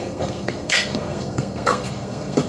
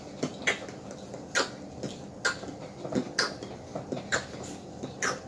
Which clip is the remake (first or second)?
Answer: first